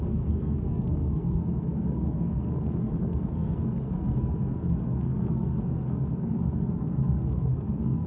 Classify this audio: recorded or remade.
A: remade